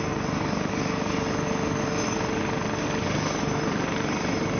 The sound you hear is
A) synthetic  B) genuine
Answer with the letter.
B